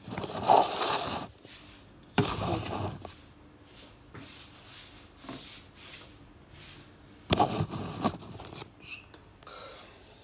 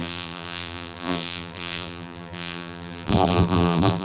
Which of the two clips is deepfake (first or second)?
second